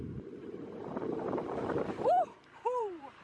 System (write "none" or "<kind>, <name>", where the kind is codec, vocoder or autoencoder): vocoder, BigVGAN v2